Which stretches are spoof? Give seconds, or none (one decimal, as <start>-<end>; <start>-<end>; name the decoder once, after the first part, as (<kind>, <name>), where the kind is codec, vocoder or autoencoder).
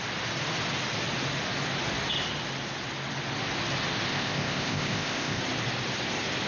4.1-5.4 (codec, ZipCodec)